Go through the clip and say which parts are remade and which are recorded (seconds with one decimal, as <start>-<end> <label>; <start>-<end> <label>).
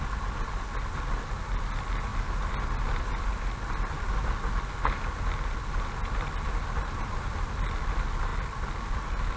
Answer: 0.0-9.4 recorded